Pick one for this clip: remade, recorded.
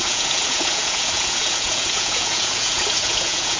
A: remade